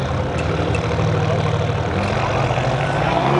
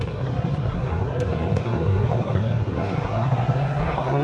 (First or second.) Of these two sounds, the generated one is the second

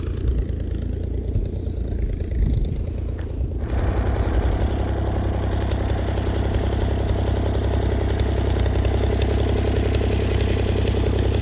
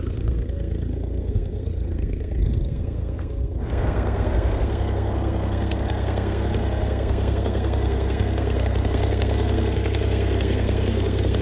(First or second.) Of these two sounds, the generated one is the second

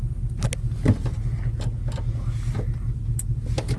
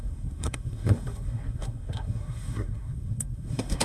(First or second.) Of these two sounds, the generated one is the second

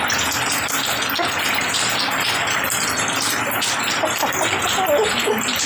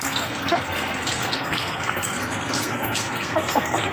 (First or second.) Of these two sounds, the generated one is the second